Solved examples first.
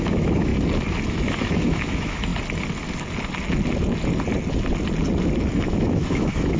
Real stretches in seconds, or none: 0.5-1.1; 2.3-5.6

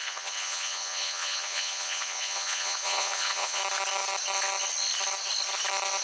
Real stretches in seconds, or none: 3.6-6.0

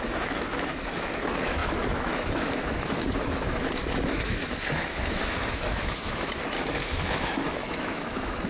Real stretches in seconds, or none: none

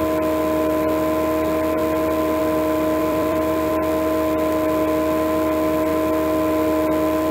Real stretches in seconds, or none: 0.0-3.0; 3.7-7.3

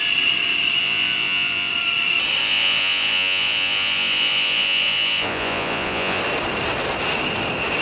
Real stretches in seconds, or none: 0.0-0.8; 1.7-2.4; 6.2-7.8

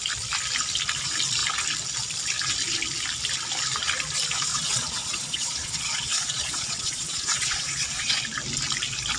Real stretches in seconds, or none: 0.0-4.5; 8.2-9.2